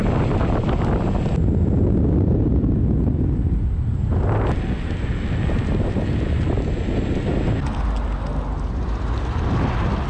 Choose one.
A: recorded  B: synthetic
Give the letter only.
A